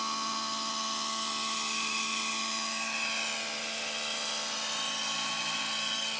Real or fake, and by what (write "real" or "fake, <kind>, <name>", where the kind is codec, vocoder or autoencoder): real